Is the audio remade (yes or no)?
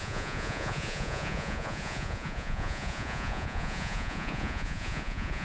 yes